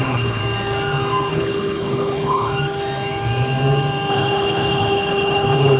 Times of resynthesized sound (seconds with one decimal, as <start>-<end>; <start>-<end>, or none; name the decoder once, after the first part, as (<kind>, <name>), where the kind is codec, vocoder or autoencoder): 0.0-0.4 (codec, HILCodec); 1.3-2.5; 4.1-5.8